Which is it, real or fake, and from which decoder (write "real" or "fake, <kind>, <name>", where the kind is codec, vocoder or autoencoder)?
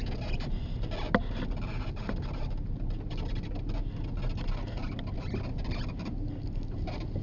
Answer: real